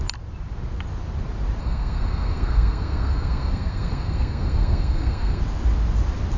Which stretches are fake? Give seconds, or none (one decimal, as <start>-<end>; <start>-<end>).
1.6-5.4